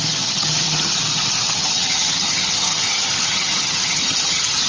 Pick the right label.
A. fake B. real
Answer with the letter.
A